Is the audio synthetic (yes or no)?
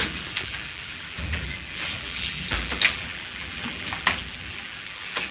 yes